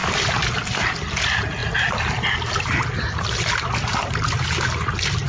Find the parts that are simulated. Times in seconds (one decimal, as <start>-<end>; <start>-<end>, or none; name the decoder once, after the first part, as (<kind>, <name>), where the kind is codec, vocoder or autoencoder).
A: none